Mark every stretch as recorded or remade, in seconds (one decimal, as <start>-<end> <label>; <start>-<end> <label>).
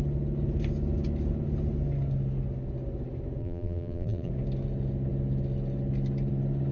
0.0-3.4 recorded; 3.4-4.3 remade; 4.3-6.7 recorded